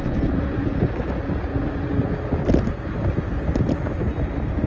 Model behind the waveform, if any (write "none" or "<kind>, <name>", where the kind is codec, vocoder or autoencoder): none